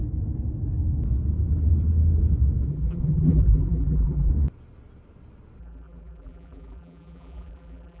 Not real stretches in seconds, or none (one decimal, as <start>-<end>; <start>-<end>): 2.7-4.3; 5.6-8.0

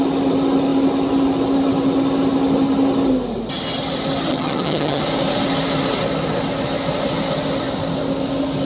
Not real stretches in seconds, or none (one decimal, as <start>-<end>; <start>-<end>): 4.3-5.0

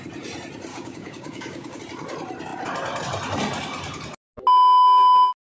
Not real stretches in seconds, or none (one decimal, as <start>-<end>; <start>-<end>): 0.7-1.8

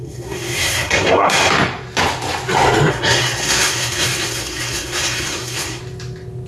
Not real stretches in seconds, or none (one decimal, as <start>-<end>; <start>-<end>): 0.0-1.4; 2.9-5.8

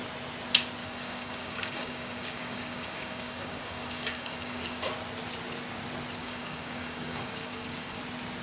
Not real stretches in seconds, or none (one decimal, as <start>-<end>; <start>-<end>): 0.8-4.9; 6.2-8.0

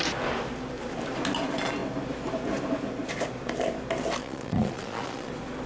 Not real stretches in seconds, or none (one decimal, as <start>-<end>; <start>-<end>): 4.2-5.3